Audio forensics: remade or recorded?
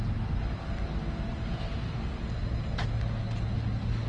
recorded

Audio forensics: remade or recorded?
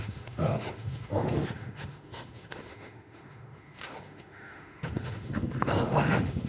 remade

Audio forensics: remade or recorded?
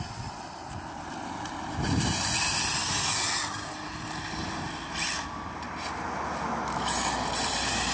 recorded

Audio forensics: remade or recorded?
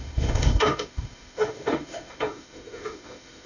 remade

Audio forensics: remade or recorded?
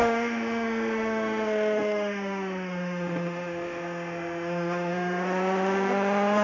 remade